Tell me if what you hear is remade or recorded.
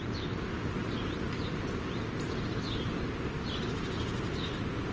recorded